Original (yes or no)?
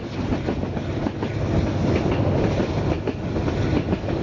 yes